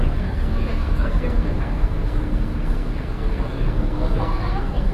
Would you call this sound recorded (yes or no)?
no